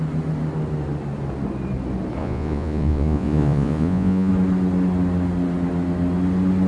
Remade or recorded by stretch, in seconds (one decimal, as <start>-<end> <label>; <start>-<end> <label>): 0.0-2.2 recorded; 2.2-4.3 remade; 4.3-6.7 recorded